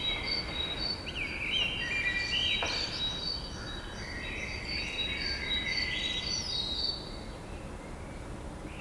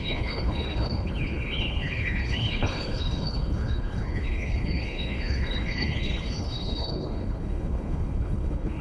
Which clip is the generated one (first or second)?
second